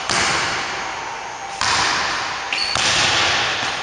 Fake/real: real